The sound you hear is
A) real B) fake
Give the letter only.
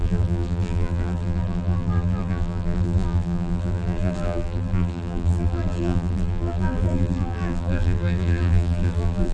B